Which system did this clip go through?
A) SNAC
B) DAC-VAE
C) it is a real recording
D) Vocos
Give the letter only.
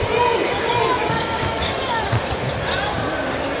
C